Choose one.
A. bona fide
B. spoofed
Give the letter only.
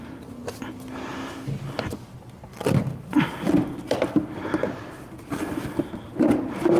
A